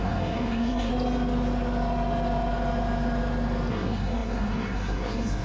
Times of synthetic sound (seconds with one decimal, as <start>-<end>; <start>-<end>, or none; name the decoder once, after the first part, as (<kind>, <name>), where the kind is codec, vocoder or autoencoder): 0.0-0.9 (codec, SNAC); 3.7-5.4